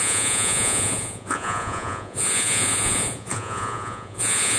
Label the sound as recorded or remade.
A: remade